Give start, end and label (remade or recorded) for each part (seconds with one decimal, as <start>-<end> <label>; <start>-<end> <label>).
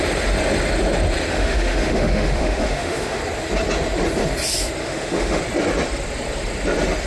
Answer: 0.0-1.3 recorded; 1.3-3.2 remade; 3.2-4.8 recorded; 4.8-5.4 remade; 5.4-7.1 recorded